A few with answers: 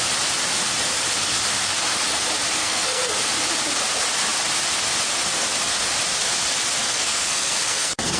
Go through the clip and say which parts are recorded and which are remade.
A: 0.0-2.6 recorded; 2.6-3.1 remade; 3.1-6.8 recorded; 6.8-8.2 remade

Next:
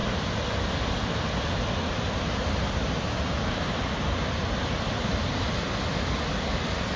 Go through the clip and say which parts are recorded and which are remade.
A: 0.0-7.0 recorded

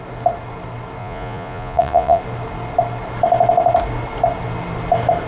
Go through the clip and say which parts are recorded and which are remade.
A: 0.0-1.0 recorded; 1.0-2.2 remade; 2.2-5.3 recorded

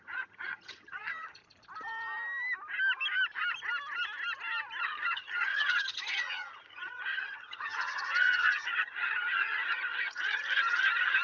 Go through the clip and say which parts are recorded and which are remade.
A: 0.0-1.4 remade; 1.4-4.8 recorded; 4.8-11.2 remade

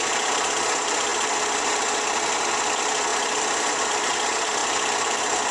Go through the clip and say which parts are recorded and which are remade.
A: 0.0-1.1 recorded; 1.1-1.7 remade; 1.7-3.1 recorded; 3.1-4.1 remade; 4.1-4.6 recorded; 4.6-5.5 remade

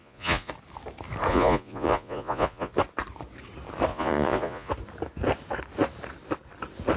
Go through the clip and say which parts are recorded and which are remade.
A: 0.0-0.5 remade; 0.5-1.3 recorded; 1.3-2.7 remade; 2.7-3.9 recorded; 3.9-4.7 remade; 4.7-7.0 recorded

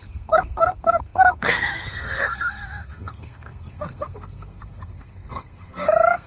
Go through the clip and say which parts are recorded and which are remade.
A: 0.0-6.3 remade

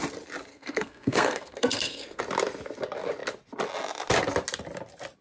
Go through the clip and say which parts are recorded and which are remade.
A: 0.0-0.5 recorded; 0.5-2.2 remade; 2.2-5.2 recorded